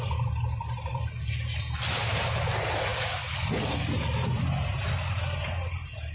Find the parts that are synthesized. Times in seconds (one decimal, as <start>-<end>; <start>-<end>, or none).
0.9-1.6; 2.9-3.7